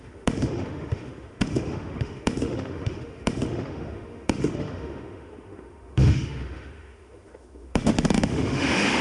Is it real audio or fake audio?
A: fake